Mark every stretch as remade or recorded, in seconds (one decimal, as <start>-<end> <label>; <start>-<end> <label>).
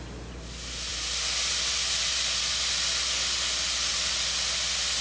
0.0-5.0 recorded